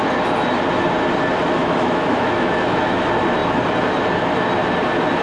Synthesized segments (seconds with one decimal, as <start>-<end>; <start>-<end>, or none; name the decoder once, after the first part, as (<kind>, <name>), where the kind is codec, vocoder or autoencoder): 1.6-3.0 (autoencoder, DAC-VAE)

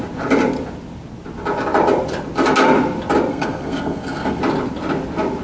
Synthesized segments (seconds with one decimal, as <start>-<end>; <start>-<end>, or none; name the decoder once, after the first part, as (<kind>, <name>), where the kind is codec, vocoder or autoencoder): 3.3-4.4 (codec, SNAC)

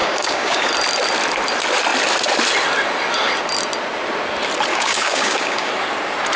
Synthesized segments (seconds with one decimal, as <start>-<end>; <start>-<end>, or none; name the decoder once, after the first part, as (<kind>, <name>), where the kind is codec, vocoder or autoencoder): 0.0-0.7 (codec, DAC); 4.7-5.7